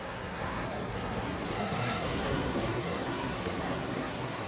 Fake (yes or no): yes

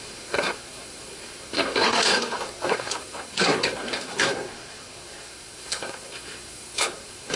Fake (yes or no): yes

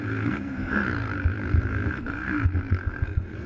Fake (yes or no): yes